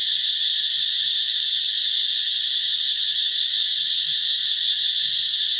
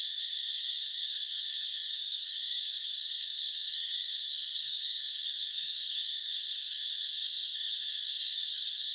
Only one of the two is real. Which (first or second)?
first